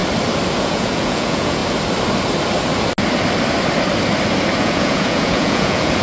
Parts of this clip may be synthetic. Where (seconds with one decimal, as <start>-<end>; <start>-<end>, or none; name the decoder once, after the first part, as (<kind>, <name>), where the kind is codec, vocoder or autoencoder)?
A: 0.6-1.6 (vocoder, Vocos); 4.6-6.0